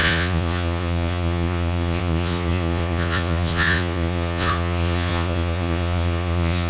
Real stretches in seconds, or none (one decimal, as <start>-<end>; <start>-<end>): none